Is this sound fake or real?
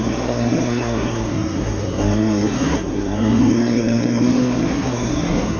fake